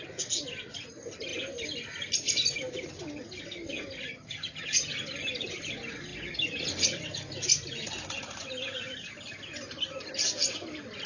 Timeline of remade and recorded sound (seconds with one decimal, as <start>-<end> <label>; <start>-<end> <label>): 0.0-4.1 recorded; 4.1-4.9 remade; 4.9-11.1 recorded